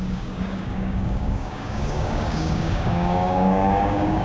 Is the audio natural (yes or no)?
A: no